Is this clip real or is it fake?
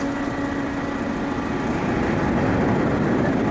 real